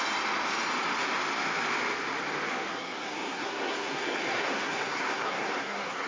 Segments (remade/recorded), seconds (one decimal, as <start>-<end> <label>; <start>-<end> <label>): 0.0-2.7 recorded; 2.7-6.1 remade